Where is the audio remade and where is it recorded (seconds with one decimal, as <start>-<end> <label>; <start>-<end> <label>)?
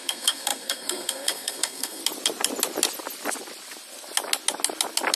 0.0-2.0 remade; 2.0-5.2 recorded